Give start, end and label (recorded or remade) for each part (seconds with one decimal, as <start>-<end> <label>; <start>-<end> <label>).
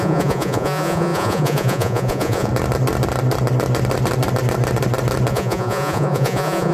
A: 0.0-2.5 remade; 2.5-5.3 recorded; 5.3-6.7 remade